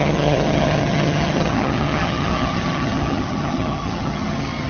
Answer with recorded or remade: remade